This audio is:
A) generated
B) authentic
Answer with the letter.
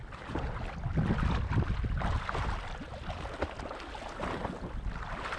B